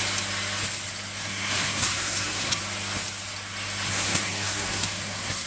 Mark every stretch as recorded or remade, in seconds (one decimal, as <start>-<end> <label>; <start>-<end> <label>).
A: 0.0-1.2 recorded; 1.2-2.6 remade; 2.6-3.9 recorded; 3.9-5.5 remade